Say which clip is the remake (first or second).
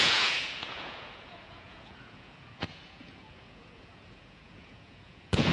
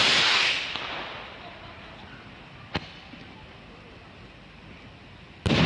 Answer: first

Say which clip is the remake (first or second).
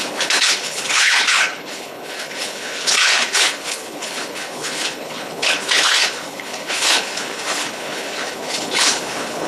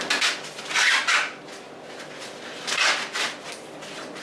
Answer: first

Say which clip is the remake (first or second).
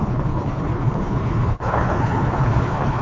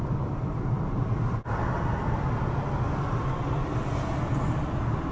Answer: first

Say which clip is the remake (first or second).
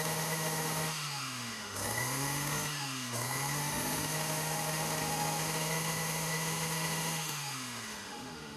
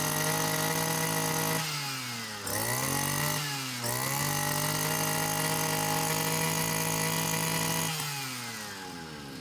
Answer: first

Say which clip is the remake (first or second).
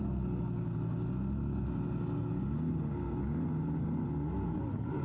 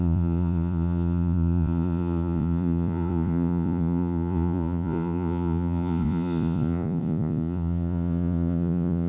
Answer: second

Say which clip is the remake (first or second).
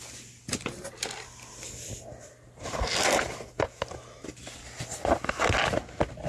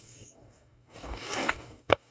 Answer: second